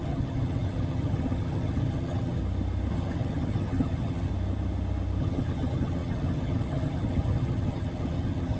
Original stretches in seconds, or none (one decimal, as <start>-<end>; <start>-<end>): 2.4-2.9; 4.3-5.2